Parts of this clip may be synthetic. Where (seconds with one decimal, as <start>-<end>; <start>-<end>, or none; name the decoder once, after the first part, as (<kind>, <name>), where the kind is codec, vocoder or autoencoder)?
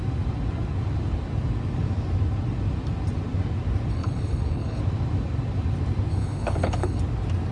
3.9-4.8 (codec, HILCodec); 6.1-7.0